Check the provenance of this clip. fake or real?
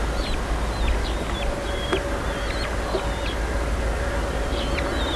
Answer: real